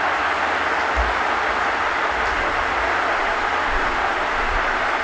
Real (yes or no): yes